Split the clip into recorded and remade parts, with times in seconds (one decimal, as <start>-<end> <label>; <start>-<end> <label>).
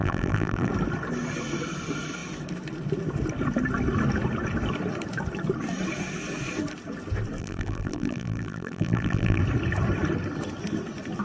0.0-0.7 remade; 0.7-7.4 recorded; 7.4-9.4 remade; 9.4-11.2 recorded